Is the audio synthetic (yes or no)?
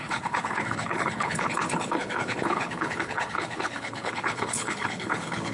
yes